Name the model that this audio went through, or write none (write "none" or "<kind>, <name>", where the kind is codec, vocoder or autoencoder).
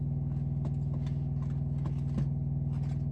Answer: none